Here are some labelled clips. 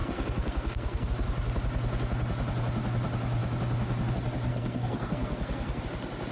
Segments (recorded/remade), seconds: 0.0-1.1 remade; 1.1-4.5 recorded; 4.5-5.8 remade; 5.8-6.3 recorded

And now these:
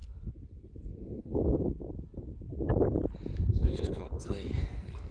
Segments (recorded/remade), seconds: 0.0-0.9 recorded; 0.9-1.4 remade; 1.4-3.5 recorded; 3.5-5.1 remade

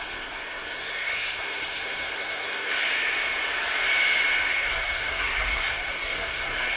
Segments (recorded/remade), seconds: 0.0-2.7 remade; 2.7-4.5 recorded; 4.5-6.8 remade

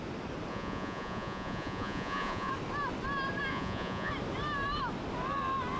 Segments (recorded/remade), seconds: 0.0-0.5 recorded; 0.5-2.5 remade; 2.5-3.5 recorded; 3.5-4.1 remade; 4.1-5.8 recorded

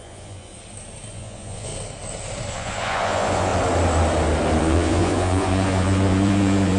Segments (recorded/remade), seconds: 0.0-0.5 remade; 0.5-1.1 recorded; 1.1-1.7 remade; 1.7-2.5 recorded; 2.5-3.5 remade; 3.5-4.6 recorded; 4.6-6.8 remade

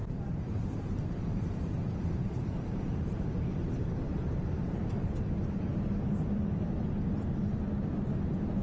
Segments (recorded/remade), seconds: 0.0-3.3 remade; 3.3-4.1 recorded; 4.1-5.1 remade; 5.1-8.6 recorded

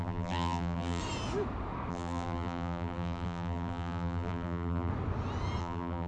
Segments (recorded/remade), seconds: 0.0-1.0 remade; 1.0-1.9 recorded; 1.9-4.9 remade; 4.9-5.6 recorded; 5.6-6.1 remade

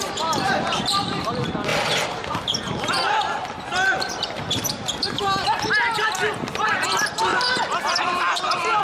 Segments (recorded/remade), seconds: 0.0-7.3 remade; 7.3-8.8 recorded